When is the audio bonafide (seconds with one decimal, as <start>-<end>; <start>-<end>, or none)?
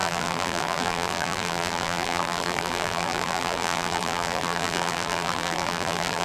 none